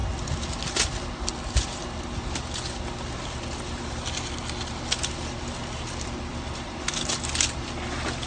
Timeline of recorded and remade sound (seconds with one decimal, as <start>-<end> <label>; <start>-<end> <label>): 0.0-8.3 recorded